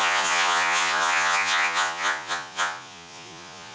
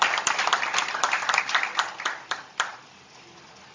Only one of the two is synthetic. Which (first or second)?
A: first